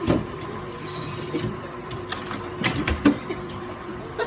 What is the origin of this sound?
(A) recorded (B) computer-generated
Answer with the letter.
B